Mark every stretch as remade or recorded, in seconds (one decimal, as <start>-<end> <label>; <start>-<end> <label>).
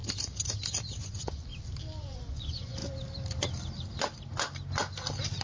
0.0-1.0 recorded; 1.0-1.5 remade; 1.5-2.0 recorded; 2.0-2.8 remade; 2.8-5.4 recorded